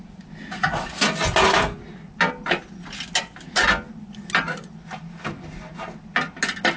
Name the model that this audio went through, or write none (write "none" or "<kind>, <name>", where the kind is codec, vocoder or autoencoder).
none